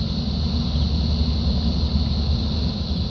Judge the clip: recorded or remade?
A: recorded